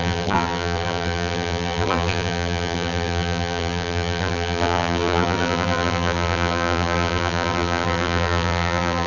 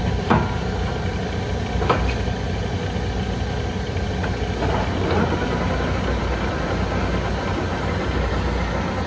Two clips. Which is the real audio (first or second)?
second